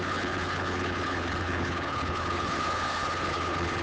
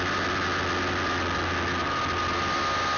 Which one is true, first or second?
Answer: second